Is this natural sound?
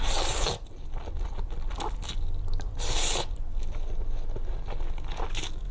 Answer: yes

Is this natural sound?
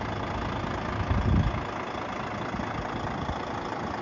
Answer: yes